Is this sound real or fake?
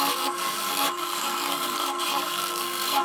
fake